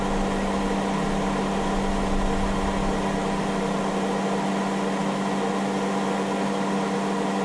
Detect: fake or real real